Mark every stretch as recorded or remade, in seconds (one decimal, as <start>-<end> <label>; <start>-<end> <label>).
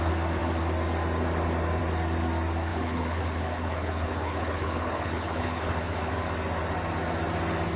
0.0-2.7 recorded; 2.7-6.1 remade; 6.1-7.8 recorded